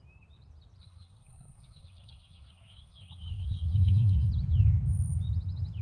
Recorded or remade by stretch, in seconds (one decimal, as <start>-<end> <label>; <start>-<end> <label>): 0.0-0.8 recorded; 0.8-4.3 remade; 4.3-5.8 recorded